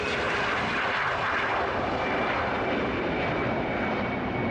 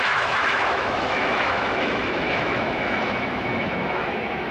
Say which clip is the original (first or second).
first